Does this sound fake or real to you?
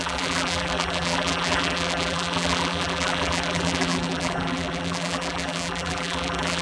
fake